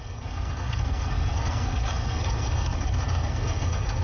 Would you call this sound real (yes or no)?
no